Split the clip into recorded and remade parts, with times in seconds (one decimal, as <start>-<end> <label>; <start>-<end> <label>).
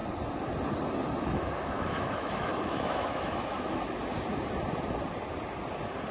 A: 0.0-1.2 recorded; 1.2-4.0 remade; 4.0-6.1 recorded